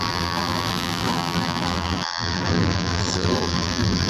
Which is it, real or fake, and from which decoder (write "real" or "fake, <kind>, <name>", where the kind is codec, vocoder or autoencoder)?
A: fake, vocoder, BigVGAN v2